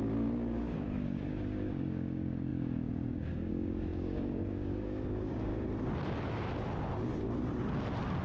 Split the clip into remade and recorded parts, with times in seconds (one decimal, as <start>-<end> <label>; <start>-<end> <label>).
0.0-5.5 remade; 5.5-8.2 recorded